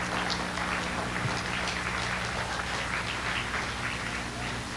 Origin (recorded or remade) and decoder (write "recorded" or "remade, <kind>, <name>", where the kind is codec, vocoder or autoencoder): recorded